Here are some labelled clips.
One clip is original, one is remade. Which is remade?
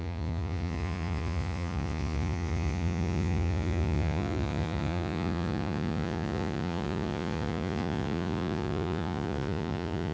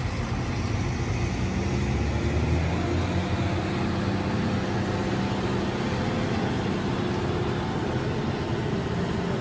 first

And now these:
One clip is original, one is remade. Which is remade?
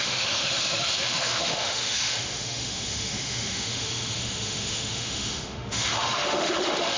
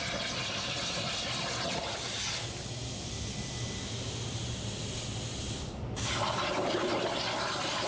first